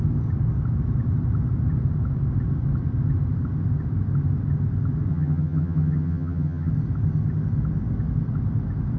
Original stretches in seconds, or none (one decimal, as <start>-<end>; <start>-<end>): 0.0-5.1; 6.7-9.0